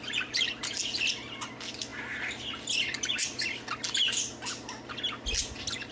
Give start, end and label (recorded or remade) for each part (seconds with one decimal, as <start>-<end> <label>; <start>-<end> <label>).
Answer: 0.0-0.6 remade; 0.6-5.9 recorded